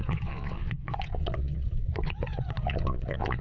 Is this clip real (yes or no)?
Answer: no